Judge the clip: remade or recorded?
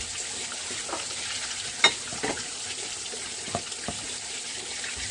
recorded